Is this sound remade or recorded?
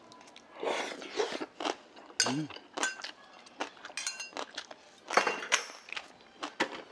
recorded